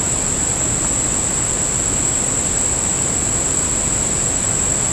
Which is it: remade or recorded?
recorded